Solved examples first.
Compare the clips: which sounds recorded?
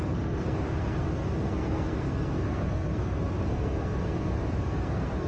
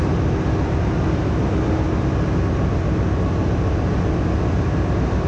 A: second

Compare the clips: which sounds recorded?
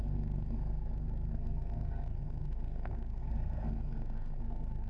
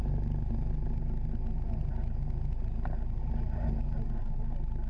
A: second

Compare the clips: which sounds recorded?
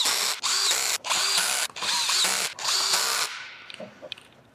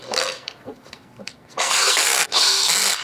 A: first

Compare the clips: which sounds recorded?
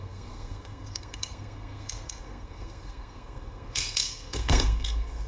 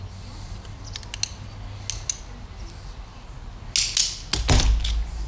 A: second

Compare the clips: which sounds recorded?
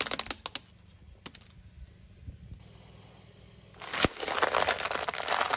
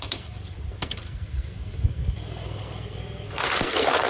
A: first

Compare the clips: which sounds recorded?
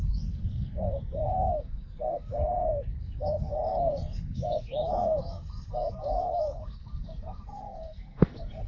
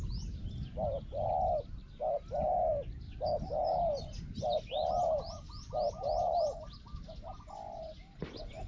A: second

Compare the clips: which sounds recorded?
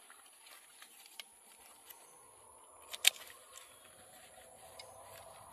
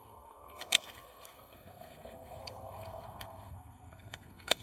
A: first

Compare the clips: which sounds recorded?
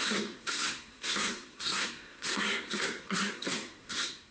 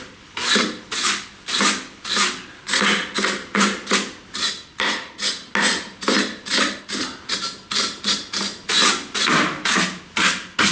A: second